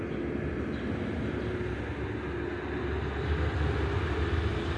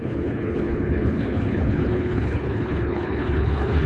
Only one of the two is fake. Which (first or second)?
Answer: second